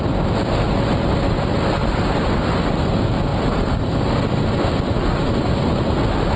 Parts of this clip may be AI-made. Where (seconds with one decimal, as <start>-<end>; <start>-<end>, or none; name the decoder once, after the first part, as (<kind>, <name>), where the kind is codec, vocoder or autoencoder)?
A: 1.8-2.8 (vocoder, BigVGAN v2); 3.3-5.5